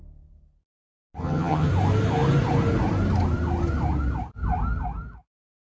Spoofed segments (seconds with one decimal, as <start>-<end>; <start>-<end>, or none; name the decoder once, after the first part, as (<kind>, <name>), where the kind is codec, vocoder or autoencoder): 1.2-1.7 (vocoder, HiFi-GAN)

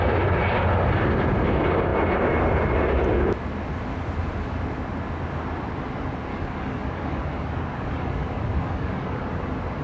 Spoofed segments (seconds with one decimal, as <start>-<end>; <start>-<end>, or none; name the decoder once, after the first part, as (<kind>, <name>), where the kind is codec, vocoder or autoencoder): 6.3-9.3 (codec, DAC)

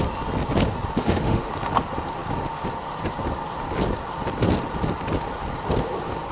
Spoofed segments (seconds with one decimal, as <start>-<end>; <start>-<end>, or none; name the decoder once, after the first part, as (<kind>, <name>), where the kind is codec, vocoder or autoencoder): 1.0-1.5 (autoencoder, DAC-VAE)

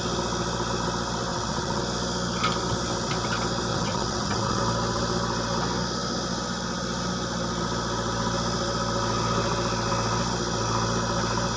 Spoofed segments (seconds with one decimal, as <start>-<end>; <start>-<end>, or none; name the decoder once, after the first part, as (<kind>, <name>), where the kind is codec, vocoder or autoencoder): 1.3-1.8 (vocoder, WaveNeXt); 3.7-4.6